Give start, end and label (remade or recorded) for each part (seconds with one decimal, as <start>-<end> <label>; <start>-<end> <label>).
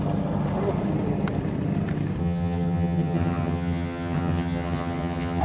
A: 0.0-2.2 recorded; 2.2-5.4 remade